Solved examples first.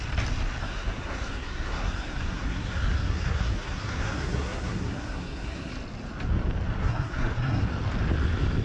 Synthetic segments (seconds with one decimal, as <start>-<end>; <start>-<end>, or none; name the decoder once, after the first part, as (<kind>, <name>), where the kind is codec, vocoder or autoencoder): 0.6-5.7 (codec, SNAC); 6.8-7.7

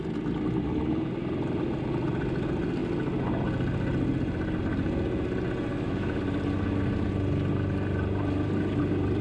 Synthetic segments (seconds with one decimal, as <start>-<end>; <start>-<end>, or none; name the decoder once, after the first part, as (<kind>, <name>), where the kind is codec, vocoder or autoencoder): 5.7-6.2 (autoencoder, DAC-VAE)

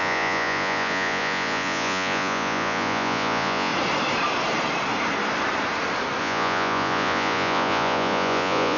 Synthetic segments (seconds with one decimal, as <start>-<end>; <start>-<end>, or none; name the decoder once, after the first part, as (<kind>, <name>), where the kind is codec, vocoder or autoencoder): 0.0-3.7 (vocoder, Vocos); 6.2-8.8

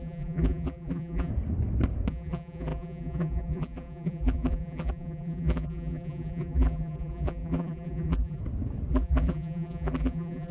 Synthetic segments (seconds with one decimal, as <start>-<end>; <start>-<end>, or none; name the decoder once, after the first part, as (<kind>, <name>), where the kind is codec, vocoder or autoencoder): 0.0-1.3 (vocoder, BigVGAN v2); 2.1-8.4; 8.9-10.5